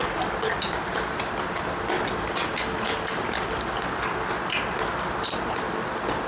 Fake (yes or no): no